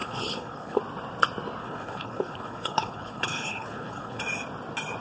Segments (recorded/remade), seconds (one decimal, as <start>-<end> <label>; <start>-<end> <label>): 0.0-0.8 remade; 0.8-1.6 recorded; 1.6-4.2 remade; 4.2-5.0 recorded